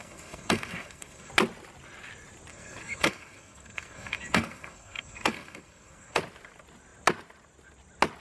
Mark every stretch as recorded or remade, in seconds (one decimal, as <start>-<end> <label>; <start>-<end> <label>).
0.0-1.3 remade; 1.3-2.5 recorded; 2.5-6.2 remade; 6.2-8.2 recorded